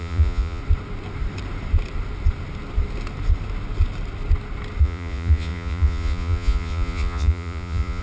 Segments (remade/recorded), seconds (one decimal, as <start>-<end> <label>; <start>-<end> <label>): 0.0-0.6 remade; 0.6-4.8 recorded; 4.8-8.0 remade